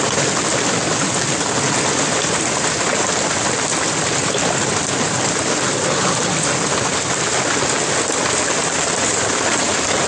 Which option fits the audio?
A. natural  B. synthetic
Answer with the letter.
A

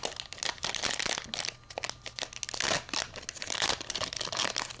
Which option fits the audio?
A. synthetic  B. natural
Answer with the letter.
B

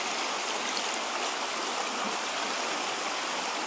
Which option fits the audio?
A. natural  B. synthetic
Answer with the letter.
A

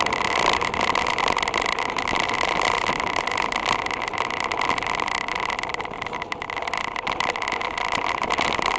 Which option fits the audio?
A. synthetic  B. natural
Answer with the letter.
B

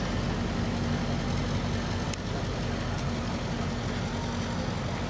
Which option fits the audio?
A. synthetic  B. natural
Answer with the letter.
B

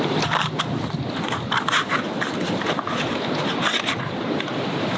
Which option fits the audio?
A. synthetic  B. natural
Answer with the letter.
B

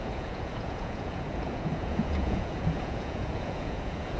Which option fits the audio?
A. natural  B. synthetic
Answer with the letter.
B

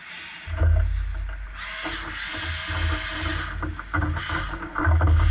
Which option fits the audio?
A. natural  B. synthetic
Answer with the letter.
A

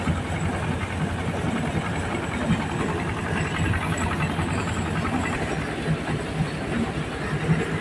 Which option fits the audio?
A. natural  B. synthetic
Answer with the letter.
A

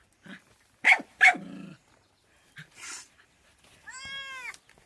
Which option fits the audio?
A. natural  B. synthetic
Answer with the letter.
A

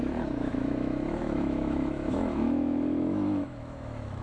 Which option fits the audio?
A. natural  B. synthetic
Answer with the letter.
B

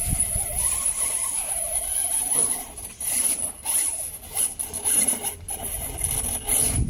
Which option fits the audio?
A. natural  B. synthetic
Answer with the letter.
A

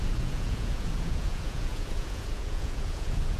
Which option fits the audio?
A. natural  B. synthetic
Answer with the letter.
B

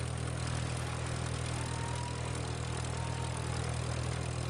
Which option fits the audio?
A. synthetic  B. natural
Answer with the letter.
B